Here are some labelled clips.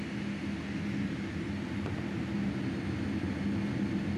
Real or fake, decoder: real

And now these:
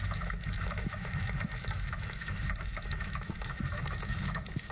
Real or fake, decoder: fake, autoencoder, DAC-VAE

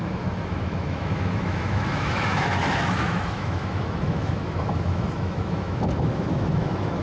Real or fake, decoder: fake, autoencoder, DAC-VAE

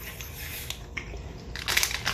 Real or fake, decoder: real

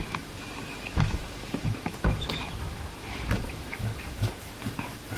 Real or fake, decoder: fake, autoencoder, DAC-VAE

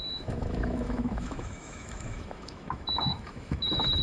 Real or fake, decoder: fake, autoencoder, DAC-VAE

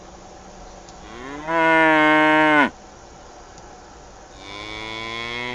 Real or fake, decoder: real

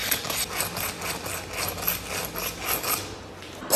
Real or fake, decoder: real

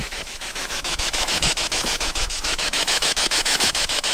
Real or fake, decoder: fake, autoencoder, DAC-VAE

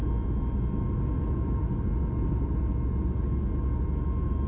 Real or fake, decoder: real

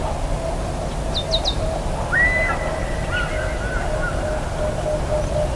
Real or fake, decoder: real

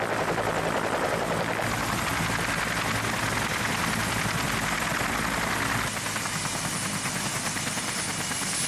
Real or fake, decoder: real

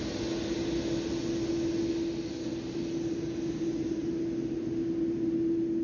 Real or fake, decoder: real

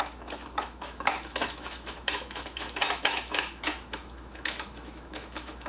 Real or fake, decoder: fake, autoencoder, DAC-VAE